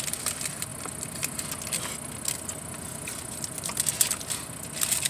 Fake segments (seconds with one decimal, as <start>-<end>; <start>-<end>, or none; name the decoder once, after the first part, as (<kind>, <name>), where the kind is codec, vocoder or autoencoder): none